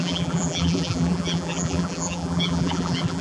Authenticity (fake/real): fake